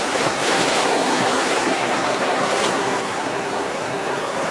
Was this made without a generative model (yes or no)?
no